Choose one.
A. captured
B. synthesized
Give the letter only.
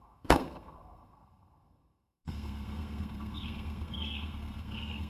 B